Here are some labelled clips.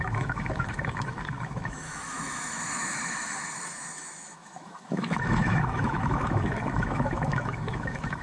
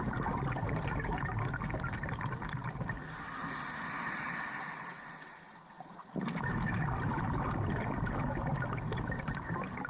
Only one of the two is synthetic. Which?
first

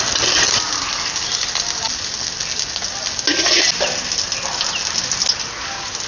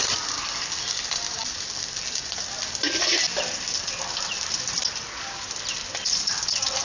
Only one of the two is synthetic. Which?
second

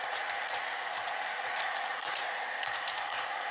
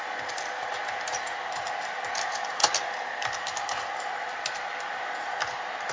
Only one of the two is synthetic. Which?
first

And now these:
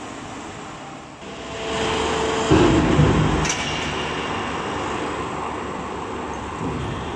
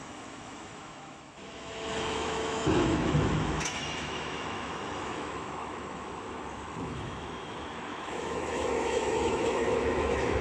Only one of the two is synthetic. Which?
second